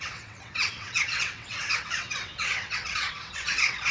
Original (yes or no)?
no